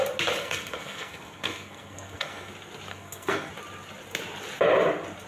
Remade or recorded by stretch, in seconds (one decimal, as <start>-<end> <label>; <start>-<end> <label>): 0.0-0.4 recorded; 0.4-2.5 remade; 2.5-2.9 recorded; 2.9-3.5 remade; 3.5-5.3 recorded